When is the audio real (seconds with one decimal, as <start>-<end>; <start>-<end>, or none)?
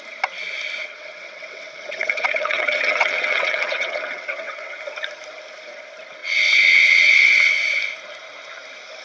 0.0-0.8; 4.8-6.2; 7.8-9.0